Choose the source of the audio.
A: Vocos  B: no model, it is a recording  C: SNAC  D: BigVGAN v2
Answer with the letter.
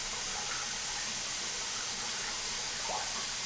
B